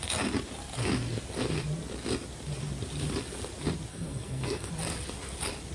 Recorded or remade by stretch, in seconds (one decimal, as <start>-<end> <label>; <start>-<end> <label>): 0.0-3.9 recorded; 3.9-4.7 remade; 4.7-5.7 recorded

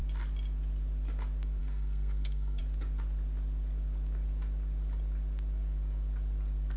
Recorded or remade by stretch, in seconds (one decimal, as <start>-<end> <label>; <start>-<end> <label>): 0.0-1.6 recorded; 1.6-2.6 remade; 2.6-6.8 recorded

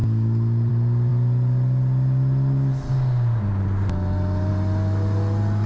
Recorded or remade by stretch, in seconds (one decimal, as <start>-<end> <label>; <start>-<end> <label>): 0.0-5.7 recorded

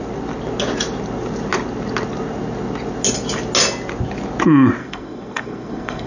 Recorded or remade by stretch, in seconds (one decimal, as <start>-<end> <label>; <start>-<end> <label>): 0.0-4.8 recorded; 4.8-6.1 remade

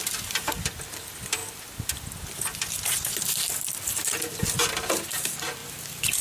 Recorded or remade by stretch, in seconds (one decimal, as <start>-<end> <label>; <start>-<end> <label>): 0.0-6.2 recorded